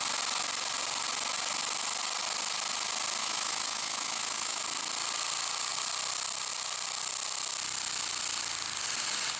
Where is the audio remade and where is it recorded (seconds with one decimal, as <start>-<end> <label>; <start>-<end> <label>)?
0.0-3.2 recorded; 3.2-4.6 remade; 4.6-9.4 recorded